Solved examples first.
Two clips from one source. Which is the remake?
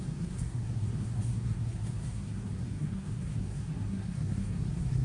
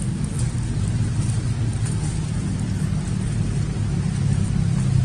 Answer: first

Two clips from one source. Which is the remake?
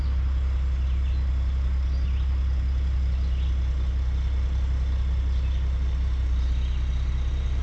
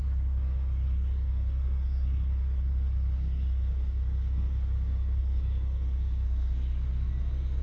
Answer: second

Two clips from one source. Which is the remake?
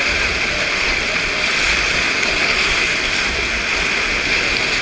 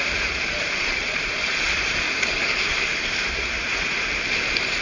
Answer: second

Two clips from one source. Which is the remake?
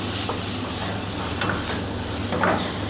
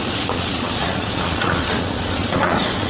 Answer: second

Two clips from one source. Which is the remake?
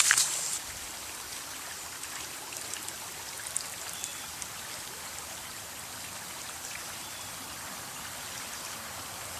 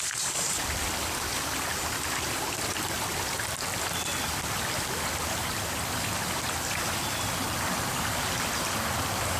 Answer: first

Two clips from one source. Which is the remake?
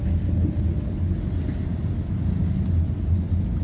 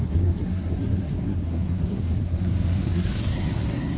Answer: second